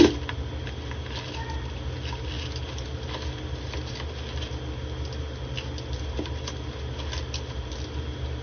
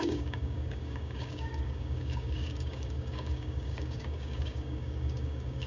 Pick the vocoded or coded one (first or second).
second